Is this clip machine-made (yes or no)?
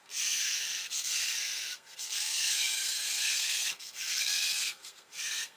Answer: yes